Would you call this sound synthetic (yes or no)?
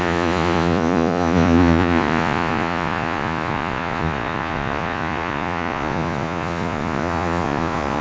yes